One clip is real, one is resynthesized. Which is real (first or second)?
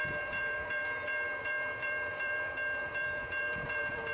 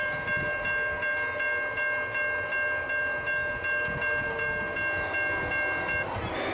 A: second